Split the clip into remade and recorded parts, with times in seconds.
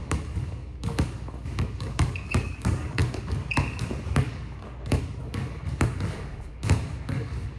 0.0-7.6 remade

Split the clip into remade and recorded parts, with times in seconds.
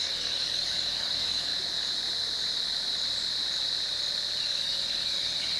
0.0-1.5 remade; 1.5-4.4 recorded; 4.4-5.6 remade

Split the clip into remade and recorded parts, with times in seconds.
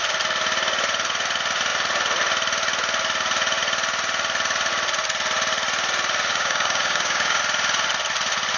0.0-6.3 recorded; 6.3-7.4 remade; 7.4-8.6 recorded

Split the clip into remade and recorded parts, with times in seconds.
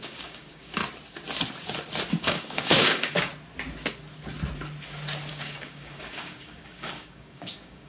0.0-0.8 remade; 0.8-2.1 recorded; 2.1-3.3 remade; 3.3-5.3 recorded; 5.3-7.9 remade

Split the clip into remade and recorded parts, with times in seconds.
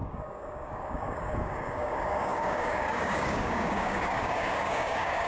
0.0-5.3 remade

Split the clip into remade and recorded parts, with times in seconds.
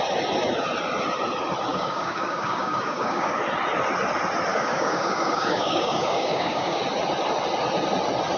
0.0-1.7 recorded; 1.7-3.4 remade; 3.4-4.5 recorded; 4.5-6.8 remade; 6.8-8.4 recorded